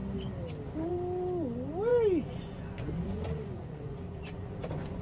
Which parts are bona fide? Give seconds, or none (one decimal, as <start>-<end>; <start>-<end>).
0.0-1.9